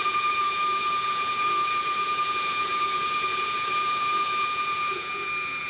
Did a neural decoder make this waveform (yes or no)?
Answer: yes